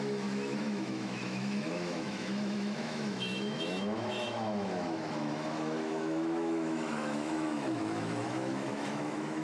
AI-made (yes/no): yes